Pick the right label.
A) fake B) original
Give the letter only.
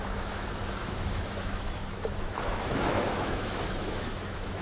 A